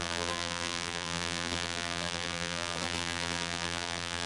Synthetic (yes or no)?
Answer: yes